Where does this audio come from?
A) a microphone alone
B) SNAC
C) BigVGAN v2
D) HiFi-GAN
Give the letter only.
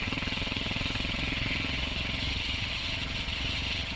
D